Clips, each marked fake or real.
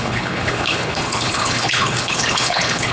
fake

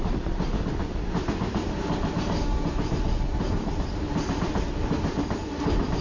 real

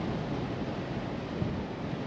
real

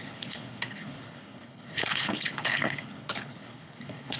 fake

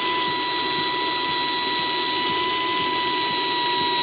real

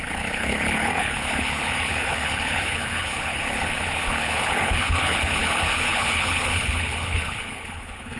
fake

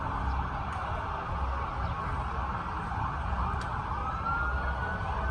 real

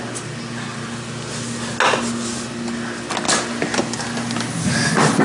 real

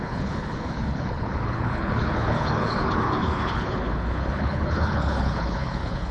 fake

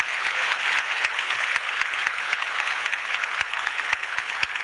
fake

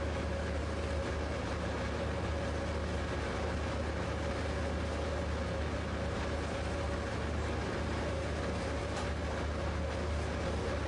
real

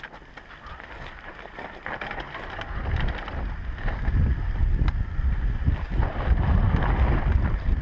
real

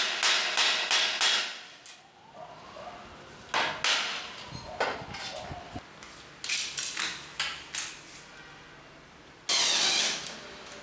real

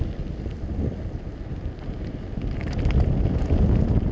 real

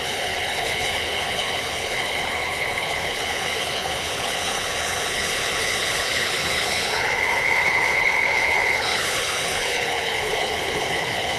fake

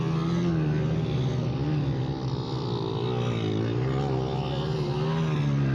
real